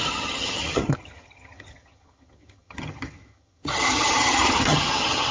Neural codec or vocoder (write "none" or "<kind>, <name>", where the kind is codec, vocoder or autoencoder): vocoder, HiFi-GAN